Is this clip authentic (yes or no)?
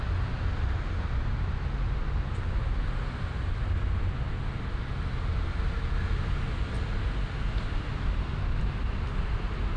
yes